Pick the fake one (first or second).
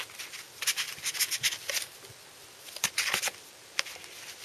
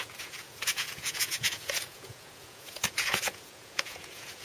second